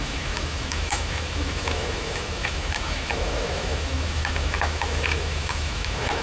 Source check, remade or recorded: remade